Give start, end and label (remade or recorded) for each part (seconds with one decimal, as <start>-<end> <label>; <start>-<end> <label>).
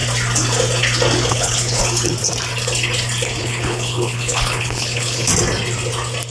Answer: 0.0-1.3 recorded; 1.3-1.8 remade; 1.8-3.4 recorded; 3.4-5.3 remade; 5.3-6.3 recorded